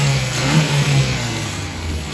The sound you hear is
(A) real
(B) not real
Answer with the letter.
B